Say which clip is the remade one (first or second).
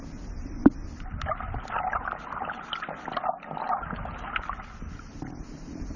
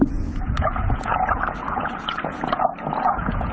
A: second